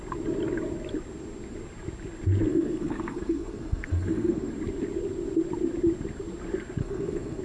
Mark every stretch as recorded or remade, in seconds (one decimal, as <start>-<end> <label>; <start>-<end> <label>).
0.0-2.5 recorded; 2.5-4.5 remade; 4.5-6.8 recorded; 6.8-7.4 remade